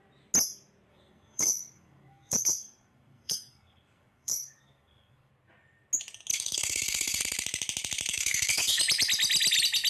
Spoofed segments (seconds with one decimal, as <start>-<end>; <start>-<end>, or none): 0.9-5.3; 6.3-7.2; 8.1-8.8